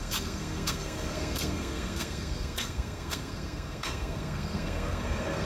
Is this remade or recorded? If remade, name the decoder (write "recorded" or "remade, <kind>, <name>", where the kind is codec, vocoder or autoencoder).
remade, codec, SNAC